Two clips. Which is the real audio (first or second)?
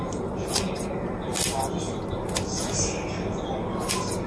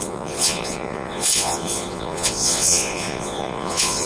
first